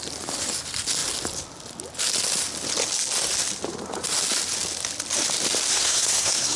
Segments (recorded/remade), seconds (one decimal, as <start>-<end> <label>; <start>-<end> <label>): 0.0-5.7 recorded; 5.7-6.6 remade